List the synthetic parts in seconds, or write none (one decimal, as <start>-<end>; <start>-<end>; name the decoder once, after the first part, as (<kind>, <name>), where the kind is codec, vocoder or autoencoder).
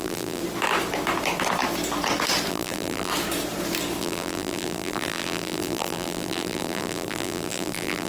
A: 0.0-0.4 (vocoder, BigVGAN v2); 2.5-3.1; 4.0-8.1